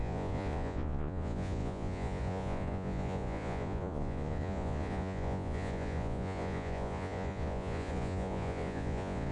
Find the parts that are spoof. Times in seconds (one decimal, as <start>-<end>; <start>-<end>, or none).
0.0-9.3